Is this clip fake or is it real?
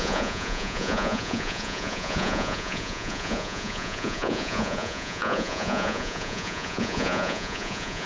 fake